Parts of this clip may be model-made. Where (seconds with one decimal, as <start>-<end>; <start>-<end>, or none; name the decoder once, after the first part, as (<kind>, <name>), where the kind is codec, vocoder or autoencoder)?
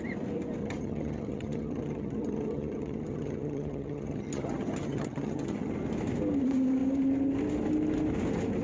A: 0.6-5.7 (vocoder, HiFi-GAN)